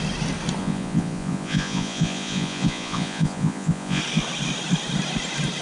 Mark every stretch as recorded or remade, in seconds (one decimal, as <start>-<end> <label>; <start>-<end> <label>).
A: 0.0-0.6 recorded; 0.6-4.0 remade; 4.0-5.6 recorded